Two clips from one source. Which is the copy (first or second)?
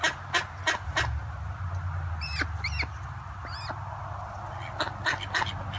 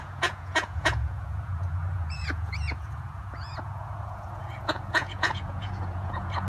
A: second